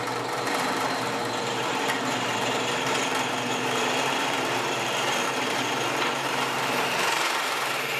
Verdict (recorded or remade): remade